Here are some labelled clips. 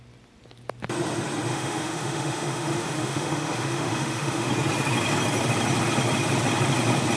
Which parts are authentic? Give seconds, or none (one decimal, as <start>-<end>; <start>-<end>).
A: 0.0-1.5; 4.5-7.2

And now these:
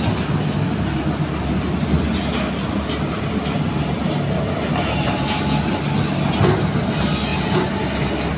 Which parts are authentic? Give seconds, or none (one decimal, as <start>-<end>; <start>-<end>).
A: 0.0-7.3

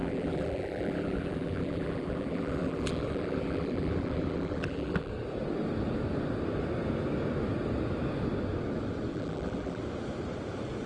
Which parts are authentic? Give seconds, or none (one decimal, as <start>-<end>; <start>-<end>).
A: 5.1-9.1; 9.8-10.9